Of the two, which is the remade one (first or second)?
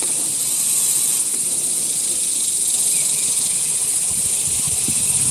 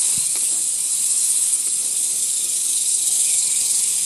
second